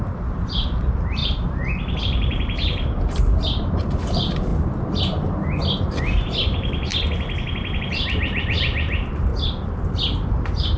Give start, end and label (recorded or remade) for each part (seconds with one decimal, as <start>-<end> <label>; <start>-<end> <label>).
0.0-1.2 remade; 1.2-2.0 recorded; 2.0-4.5 remade; 4.5-5.8 recorded; 5.8-6.9 remade; 6.9-7.8 recorded; 7.8-9.3 remade; 9.3-10.3 recorded; 10.3-10.8 remade